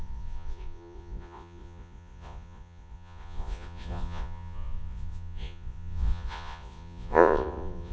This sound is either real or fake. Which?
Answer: fake